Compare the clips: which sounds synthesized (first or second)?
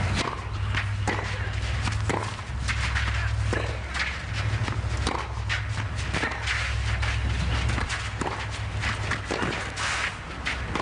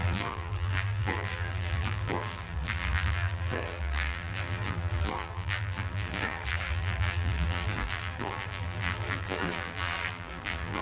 second